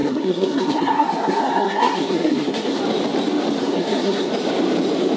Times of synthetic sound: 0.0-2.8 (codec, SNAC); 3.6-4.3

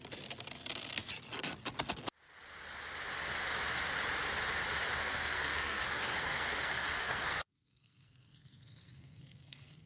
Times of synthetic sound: 5.0-9.9 (codec, SNAC)

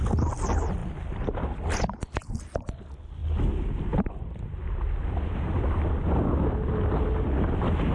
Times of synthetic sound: none

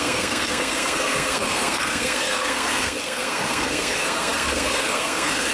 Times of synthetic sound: 0.0-5.5 (codec, SNAC)

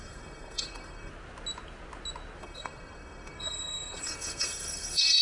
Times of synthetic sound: 0.0-1.1 (codec, SNAC); 2.4-5.2